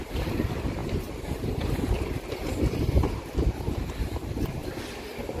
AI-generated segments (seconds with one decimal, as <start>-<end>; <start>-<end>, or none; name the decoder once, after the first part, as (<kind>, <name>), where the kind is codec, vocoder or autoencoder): 0.0-4.6 (vocoder, BigVGAN v2)